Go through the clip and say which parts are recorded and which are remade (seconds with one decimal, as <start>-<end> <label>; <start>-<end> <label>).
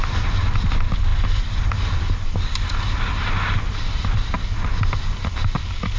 0.0-6.0 recorded